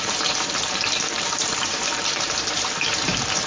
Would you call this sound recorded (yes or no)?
no